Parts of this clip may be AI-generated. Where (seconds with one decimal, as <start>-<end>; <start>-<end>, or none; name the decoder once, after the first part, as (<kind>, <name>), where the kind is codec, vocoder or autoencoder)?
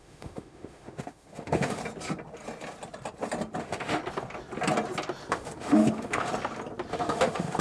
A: 0.0-1.8 (autoencoder, DAC-VAE); 3.6-4.0; 5.3-6.3; 6.9-7.6